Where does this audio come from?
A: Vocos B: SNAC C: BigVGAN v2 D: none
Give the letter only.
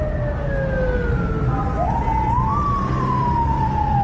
D